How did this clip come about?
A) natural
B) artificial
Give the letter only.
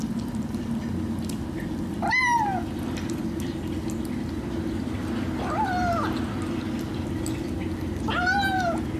A